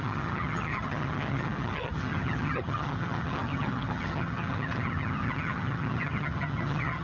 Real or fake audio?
fake